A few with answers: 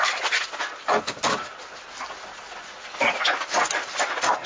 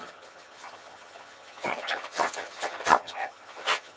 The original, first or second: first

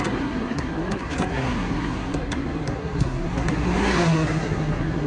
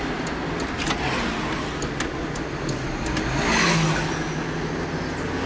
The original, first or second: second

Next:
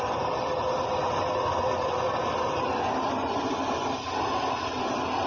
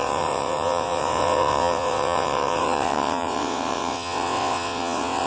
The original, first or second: first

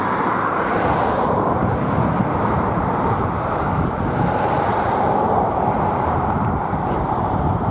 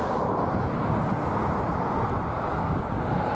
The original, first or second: second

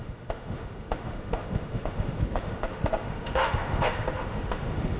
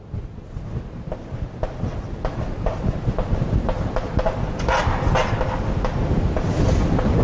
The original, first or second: second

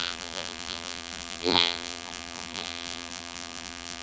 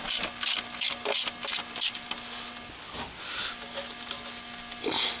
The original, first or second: second